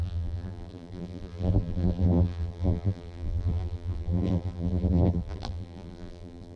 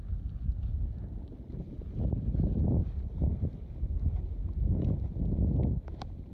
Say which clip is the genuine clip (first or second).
second